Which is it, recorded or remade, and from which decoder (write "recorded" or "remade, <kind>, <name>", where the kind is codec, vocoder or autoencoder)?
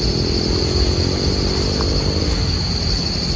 recorded